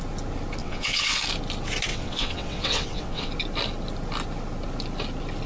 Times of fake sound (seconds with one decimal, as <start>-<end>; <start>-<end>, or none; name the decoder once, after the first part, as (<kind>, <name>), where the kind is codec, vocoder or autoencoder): 0.6-1.2 (vocoder, WaveNeXt); 1.9-3.3